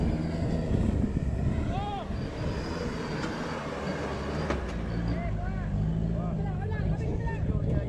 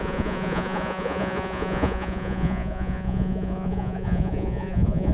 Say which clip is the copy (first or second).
second